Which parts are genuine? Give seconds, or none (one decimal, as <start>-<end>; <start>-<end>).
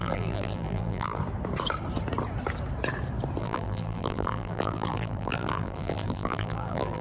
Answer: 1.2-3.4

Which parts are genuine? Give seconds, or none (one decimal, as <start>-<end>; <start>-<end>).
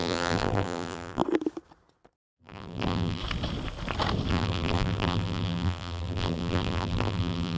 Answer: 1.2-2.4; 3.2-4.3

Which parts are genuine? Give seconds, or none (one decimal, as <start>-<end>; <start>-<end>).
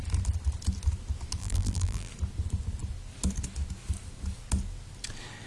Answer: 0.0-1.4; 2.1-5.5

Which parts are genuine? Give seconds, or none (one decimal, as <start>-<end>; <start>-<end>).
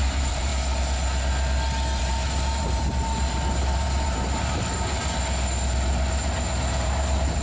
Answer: 0.5-2.0; 5.0-6.6